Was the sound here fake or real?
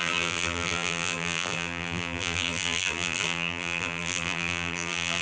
fake